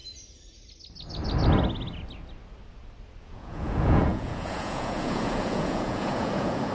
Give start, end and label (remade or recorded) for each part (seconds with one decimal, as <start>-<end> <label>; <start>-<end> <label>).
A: 0.0-3.2 recorded; 3.2-6.7 remade